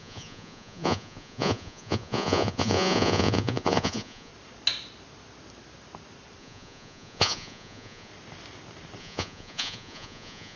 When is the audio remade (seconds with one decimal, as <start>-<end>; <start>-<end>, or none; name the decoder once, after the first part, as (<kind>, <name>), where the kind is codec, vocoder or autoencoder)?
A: 0.0-4.3 (vocoder, Vocos); 6.4-8.1; 9.0-10.6

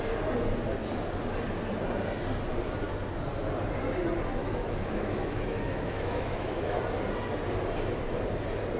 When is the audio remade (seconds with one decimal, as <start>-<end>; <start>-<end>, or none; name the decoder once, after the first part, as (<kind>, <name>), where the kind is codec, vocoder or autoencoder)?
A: 4.4-6.8 (autoencoder, DAC-VAE)

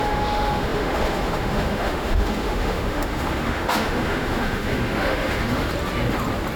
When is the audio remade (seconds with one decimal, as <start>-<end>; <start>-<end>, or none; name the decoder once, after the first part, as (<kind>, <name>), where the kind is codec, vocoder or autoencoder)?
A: 0.0-5.7 (autoencoder, DAC-VAE)

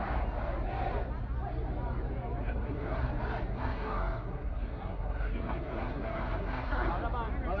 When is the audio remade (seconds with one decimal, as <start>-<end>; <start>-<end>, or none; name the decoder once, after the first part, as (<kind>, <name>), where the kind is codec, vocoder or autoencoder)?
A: 2.4-3.1 (codec, SNAC); 3.5-6.9

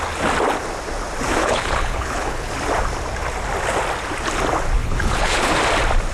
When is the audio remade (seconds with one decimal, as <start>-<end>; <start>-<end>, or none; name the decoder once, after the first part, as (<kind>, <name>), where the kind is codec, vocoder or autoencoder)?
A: 1.4-2.5 (codec, HILCodec); 4.8-5.5

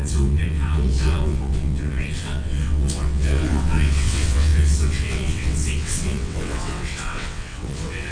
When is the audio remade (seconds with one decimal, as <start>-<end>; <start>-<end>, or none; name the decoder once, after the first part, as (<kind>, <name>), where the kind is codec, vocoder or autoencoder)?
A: 0.0-8.1 (vocoder, WaveNeXt)

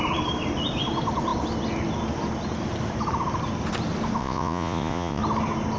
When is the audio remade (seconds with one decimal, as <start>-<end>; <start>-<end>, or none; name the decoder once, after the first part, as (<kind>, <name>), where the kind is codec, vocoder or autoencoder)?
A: 4.2-5.2 (vocoder, Vocos)